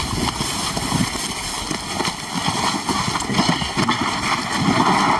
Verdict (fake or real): real